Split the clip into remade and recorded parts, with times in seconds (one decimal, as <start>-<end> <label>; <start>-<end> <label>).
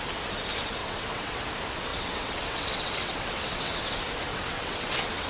0.0-0.8 recorded; 0.8-1.4 remade; 1.4-1.9 recorded; 1.9-3.9 remade; 3.9-4.3 recorded; 4.3-5.3 remade